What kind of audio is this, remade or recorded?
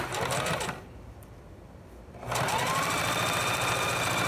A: remade